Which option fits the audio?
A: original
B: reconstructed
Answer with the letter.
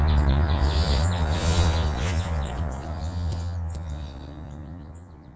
B